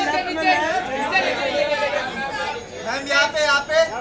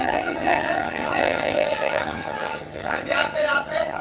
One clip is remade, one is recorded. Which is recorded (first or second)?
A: first